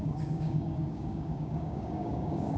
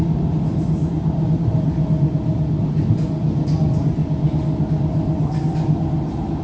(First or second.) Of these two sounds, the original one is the second